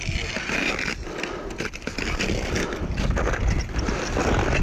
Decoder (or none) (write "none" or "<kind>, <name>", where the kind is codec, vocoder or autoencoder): none